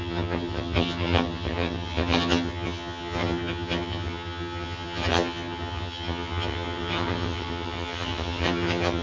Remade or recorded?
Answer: remade